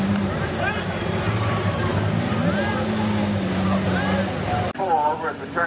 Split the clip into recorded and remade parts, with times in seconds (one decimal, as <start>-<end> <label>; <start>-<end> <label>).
0.0-1.9 remade; 1.9-4.8 recorded; 4.8-5.7 remade